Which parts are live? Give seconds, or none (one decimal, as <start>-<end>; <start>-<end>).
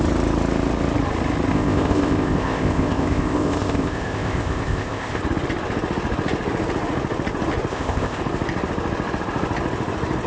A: 0.0-1.5; 5.2-7.7; 8.2-10.3